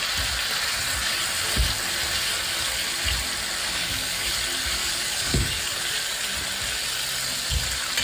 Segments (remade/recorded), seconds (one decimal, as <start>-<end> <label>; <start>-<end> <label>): 0.0-3.6 recorded; 3.6-4.3 remade; 4.3-4.8 recorded; 4.8-5.9 remade; 5.9-8.0 recorded